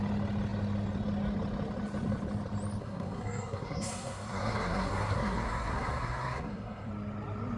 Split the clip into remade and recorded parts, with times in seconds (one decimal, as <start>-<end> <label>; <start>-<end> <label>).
0.0-2.8 recorded; 2.8-6.9 remade; 6.9-7.6 recorded